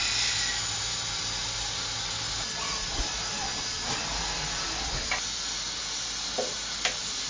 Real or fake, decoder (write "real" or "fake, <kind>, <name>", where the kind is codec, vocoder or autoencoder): real